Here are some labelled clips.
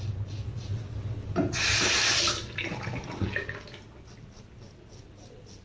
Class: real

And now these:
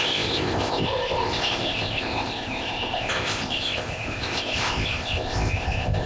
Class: fake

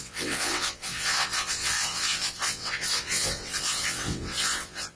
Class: fake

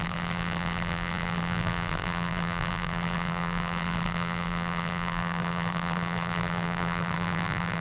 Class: fake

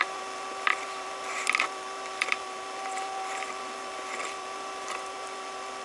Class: fake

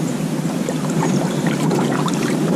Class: fake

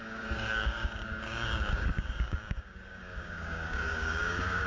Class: fake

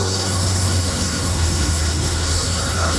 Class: fake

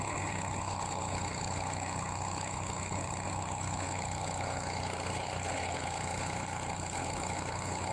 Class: fake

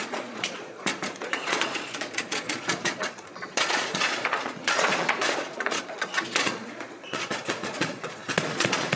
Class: fake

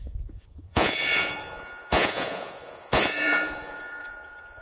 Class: fake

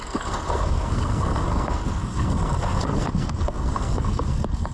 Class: fake